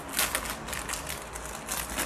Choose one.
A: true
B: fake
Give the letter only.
A